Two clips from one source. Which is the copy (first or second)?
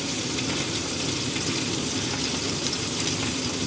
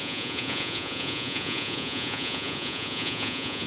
second